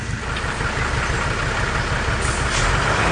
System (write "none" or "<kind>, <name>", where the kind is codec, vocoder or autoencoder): none